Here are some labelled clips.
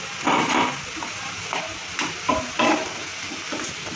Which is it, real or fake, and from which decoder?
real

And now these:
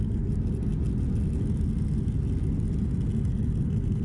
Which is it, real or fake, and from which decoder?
real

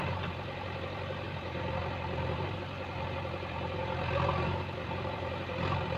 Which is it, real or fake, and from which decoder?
fake, vocoder, BigVGAN v2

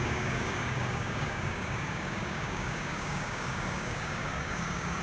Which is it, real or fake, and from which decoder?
fake, codec, DAC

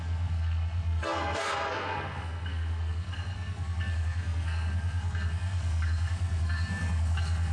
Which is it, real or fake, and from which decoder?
fake, codec, SNAC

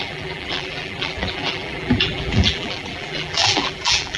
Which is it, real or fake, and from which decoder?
fake, vocoder, BigVGAN v2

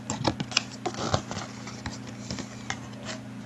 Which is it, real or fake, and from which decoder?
real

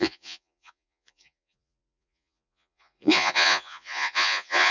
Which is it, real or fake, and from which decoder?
fake, vocoder, Vocos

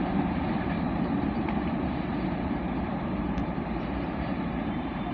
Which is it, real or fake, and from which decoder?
fake, vocoder, BigVGAN v2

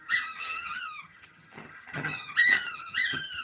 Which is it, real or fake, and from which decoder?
fake, vocoder, HiFi-GAN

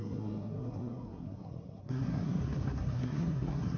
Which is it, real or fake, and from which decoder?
fake, codec, SNAC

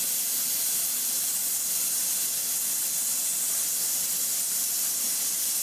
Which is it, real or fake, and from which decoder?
real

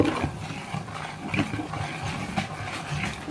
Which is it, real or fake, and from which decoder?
real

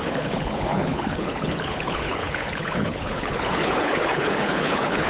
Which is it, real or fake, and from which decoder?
fake, codec, HILCodec